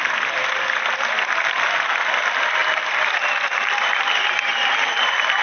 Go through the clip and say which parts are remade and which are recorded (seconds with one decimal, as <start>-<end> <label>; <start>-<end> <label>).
0.0-2.6 recorded; 2.6-4.9 remade; 4.9-5.4 recorded